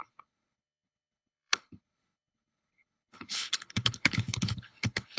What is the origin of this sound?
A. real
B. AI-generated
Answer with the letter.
B